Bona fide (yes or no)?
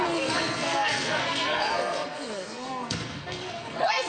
no